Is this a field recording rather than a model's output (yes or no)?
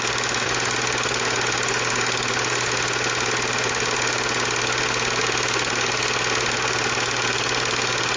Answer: yes